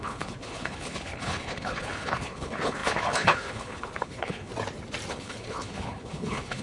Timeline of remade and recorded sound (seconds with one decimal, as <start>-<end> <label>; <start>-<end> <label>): 0.0-4.5 remade; 4.5-5.1 recorded; 5.1-6.6 remade